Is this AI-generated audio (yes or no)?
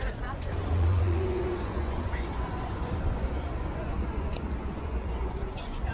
yes